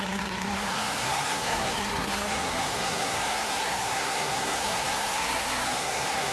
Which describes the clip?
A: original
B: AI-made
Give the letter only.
B